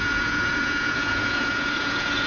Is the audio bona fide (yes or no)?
no